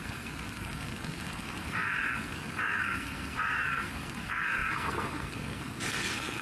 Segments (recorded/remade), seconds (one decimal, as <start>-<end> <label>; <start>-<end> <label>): 0.0-6.4 remade